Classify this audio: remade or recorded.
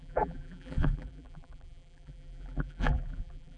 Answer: remade